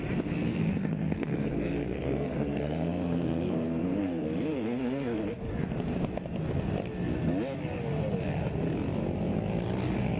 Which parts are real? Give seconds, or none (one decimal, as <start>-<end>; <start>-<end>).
0.0-0.5; 5.4-10.2